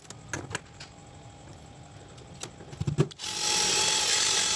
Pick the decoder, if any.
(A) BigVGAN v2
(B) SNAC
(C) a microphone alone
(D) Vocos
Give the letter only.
C